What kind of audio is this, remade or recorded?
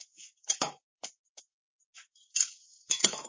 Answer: remade